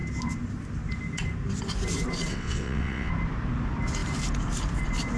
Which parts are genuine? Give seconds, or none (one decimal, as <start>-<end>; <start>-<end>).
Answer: 0.0-2.3; 3.1-5.2